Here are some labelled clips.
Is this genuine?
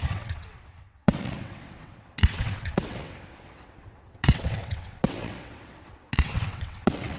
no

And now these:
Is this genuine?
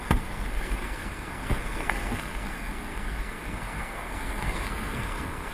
no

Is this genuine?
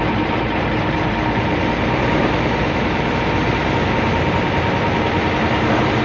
yes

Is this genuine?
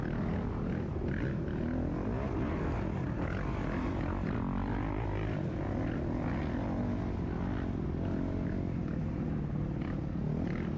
yes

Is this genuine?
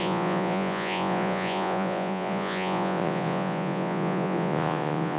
no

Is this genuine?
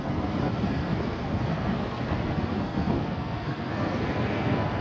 no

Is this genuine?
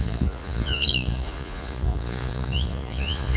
no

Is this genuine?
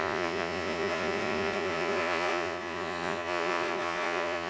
no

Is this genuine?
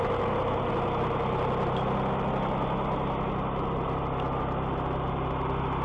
yes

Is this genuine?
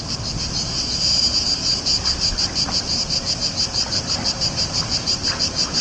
yes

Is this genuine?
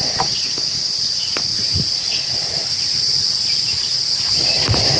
yes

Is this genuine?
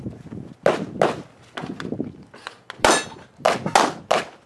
yes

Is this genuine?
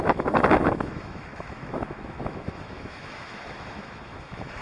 no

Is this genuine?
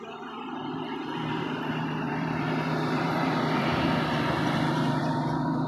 no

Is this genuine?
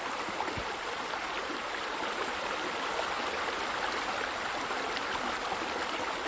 yes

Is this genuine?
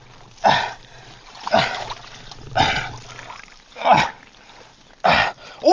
yes